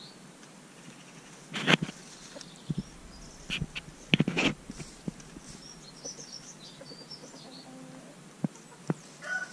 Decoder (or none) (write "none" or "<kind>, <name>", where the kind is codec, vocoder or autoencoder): none